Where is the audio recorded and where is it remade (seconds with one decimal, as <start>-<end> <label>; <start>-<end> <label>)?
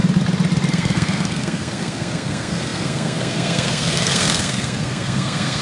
0.0-0.7 recorded; 0.7-5.6 remade